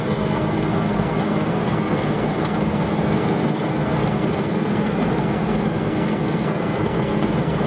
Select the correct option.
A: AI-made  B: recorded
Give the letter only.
A